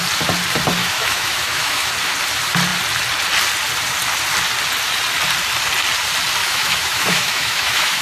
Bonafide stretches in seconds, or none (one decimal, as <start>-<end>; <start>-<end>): 0.0-0.8; 1.9-6.4